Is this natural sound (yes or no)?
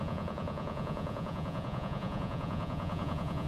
no